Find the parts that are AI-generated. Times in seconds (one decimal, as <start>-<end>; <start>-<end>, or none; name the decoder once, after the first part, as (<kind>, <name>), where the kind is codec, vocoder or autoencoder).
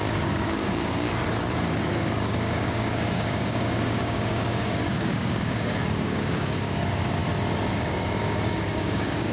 0.0-1.2 (codec, DAC); 1.9-7.2; 7.7-9.3